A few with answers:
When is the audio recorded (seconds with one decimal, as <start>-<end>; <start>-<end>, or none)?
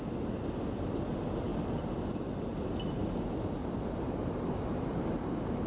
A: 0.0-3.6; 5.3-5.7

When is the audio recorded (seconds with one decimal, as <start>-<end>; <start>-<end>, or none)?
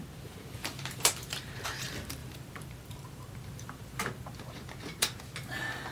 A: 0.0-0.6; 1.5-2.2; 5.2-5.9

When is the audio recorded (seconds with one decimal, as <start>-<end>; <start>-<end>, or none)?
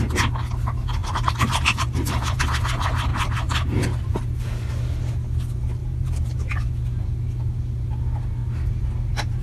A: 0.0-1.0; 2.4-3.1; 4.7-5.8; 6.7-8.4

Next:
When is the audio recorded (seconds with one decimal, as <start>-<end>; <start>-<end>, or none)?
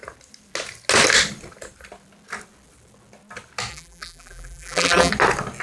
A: 0.0-3.7; 5.1-5.6